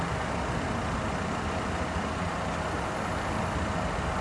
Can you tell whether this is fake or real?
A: real